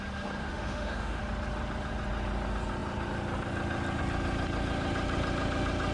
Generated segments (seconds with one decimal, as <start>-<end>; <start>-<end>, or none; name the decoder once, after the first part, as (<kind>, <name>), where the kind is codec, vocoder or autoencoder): 0.4-1.2 (autoencoder, DAC-VAE)